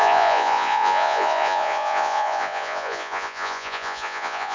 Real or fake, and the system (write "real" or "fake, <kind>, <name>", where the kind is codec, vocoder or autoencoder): fake, vocoder, Vocos